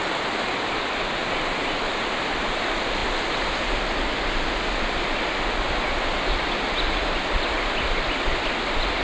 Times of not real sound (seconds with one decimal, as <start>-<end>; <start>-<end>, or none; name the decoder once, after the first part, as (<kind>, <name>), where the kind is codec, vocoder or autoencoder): none